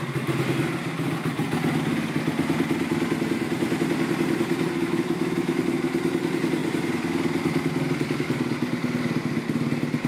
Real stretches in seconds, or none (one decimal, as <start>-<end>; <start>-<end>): 0.0-4.8; 5.6-10.1

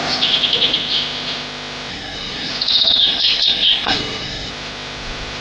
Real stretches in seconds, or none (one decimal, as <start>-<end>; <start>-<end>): 0.0-1.9; 2.5-3.0; 4.5-5.4

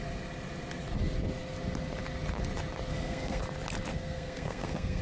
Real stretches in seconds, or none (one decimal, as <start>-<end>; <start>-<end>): 0.0-2.9; 3.4-3.9

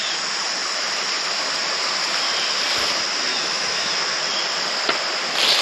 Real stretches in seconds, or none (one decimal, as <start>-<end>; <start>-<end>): 0.0-3.3; 3.9-5.6

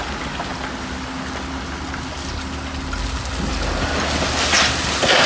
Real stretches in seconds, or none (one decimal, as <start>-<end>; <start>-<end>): 0.0-5.3

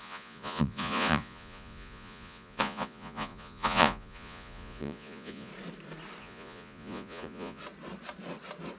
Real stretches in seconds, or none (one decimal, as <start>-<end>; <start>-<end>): 5.5-6.2; 7.6-8.8